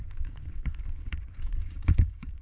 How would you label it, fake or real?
fake